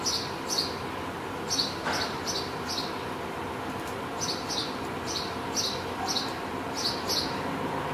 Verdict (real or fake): real